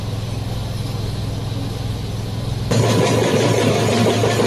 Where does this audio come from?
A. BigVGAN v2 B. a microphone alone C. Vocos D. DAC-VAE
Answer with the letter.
B